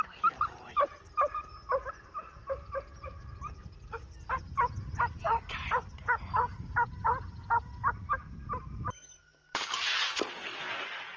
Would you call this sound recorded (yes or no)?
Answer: yes